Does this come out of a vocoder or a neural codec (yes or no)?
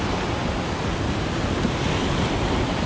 no